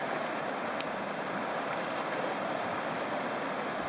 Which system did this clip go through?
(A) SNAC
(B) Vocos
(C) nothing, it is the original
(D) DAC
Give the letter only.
C